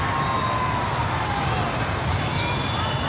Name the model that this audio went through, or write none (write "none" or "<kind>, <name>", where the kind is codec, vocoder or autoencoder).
none